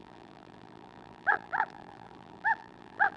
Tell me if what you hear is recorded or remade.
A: remade